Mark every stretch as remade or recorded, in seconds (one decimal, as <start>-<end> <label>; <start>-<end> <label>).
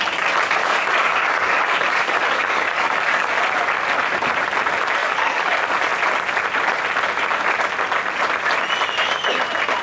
0.0-0.6 recorded; 0.6-3.3 remade; 3.3-5.0 recorded; 5.0-5.5 remade; 5.5-9.8 recorded